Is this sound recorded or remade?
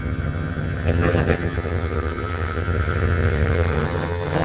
remade